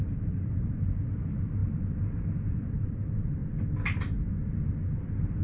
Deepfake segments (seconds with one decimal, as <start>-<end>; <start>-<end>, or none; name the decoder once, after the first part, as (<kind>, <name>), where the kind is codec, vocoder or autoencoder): 0.0-3.4 (vocoder, BigVGAN v2); 4.5-5.4